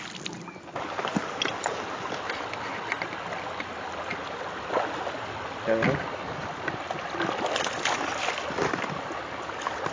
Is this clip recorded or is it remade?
recorded